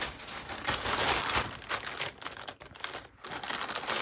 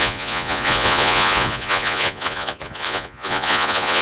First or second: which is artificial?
second